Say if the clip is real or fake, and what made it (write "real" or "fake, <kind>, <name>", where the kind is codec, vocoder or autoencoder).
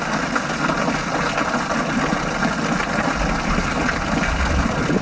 real